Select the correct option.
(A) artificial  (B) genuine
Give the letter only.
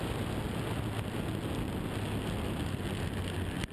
B